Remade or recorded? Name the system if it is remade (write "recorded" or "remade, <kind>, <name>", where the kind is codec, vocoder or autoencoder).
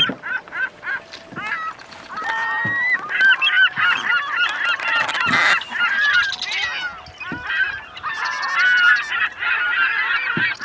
recorded